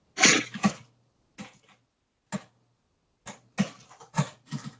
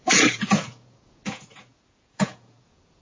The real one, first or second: first